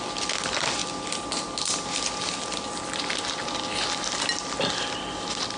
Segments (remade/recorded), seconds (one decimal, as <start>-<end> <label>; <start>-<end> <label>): 0.0-5.6 recorded